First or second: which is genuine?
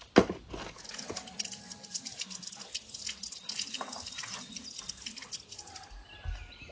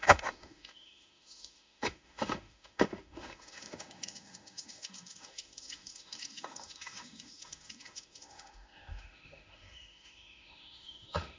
first